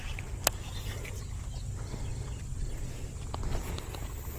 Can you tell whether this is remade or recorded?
recorded